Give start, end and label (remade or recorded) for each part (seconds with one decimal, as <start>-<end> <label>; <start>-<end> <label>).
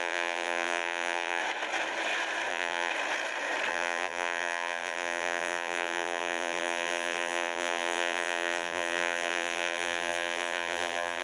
0.0-1.4 remade; 1.4-2.5 recorded; 2.5-2.9 remade; 2.9-3.7 recorded; 3.7-11.2 remade